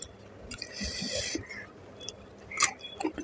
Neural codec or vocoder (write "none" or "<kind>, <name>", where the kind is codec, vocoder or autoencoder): vocoder, BigVGAN v2